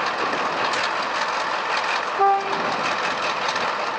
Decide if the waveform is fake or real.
real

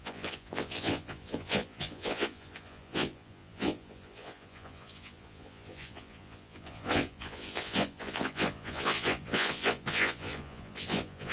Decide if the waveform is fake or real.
fake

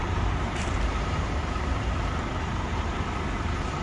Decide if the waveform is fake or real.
fake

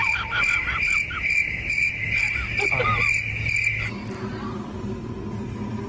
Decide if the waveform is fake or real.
real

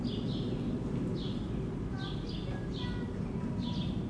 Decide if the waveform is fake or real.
real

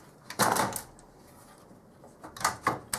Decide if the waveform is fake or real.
real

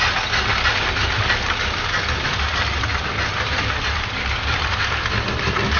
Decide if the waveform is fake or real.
real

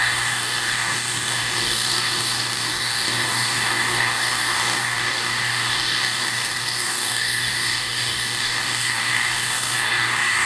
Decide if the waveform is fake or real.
fake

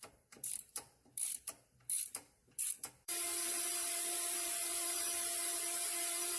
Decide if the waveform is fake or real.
fake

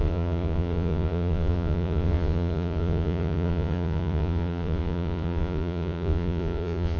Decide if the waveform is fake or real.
fake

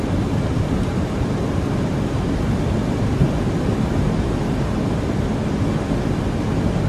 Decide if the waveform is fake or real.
real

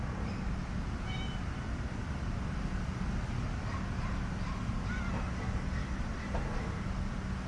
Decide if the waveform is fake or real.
real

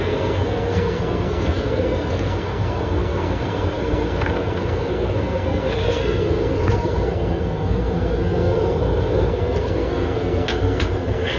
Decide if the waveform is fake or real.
fake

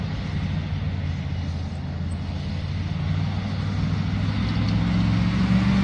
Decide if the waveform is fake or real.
real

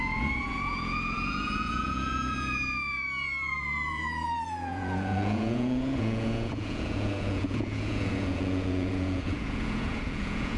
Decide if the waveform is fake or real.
fake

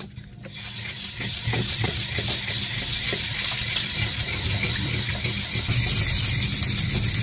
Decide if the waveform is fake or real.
real